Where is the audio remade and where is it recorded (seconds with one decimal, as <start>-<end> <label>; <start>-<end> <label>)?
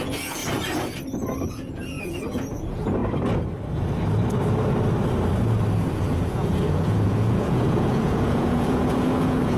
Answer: 0.0-0.4 remade; 0.4-1.5 recorded; 1.5-3.0 remade; 3.0-5.9 recorded; 5.9-9.6 remade